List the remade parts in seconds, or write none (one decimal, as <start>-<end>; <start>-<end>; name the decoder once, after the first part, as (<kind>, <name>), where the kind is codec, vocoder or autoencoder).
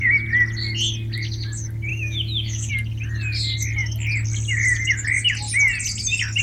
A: 1.9-2.7 (autoencoder, DAC-VAE)